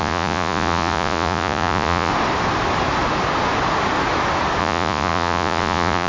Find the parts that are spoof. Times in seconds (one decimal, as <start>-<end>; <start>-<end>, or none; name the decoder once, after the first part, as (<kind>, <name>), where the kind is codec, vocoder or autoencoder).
0.0-2.1 (vocoder, Vocos); 4.6-6.1